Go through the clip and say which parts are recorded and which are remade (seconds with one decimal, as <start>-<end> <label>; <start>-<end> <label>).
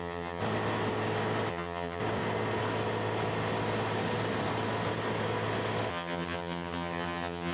0.0-0.4 remade; 0.4-1.5 recorded; 1.5-2.0 remade; 2.0-5.9 recorded; 5.9-7.5 remade